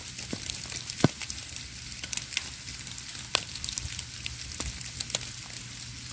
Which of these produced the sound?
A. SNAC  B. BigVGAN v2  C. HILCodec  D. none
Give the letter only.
D